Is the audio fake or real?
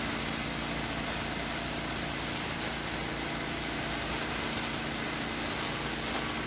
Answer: real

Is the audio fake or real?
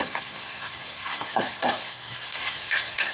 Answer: fake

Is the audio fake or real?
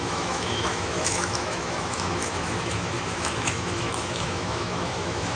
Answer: fake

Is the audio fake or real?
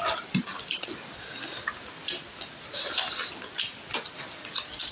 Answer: real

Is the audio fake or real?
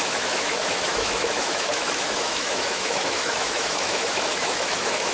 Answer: fake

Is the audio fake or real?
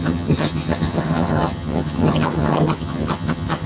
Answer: fake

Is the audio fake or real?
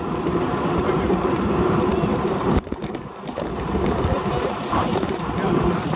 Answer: fake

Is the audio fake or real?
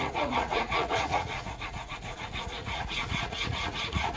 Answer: fake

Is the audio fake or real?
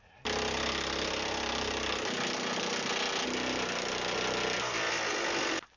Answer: real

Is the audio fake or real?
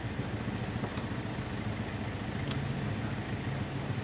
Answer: real